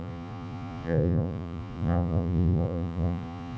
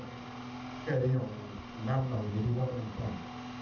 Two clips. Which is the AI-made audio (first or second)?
first